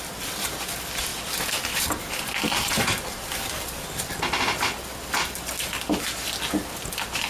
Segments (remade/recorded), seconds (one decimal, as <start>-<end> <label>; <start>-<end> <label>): 0.0-1.1 recorded; 1.1-5.5 remade; 5.5-7.3 recorded